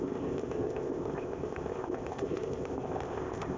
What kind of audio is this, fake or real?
fake